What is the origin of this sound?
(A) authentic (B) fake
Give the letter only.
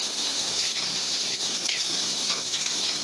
B